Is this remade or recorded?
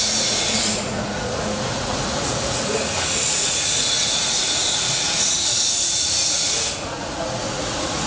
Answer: remade